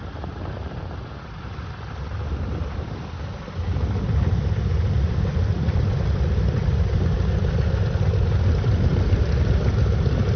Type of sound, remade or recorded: recorded